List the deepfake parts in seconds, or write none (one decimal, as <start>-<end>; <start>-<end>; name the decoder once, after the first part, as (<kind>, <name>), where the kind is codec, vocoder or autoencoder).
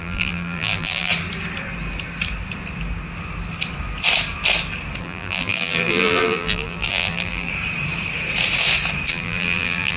0.0-1.1 (vocoder, BigVGAN v2); 5.0-7.5; 9.1-10.0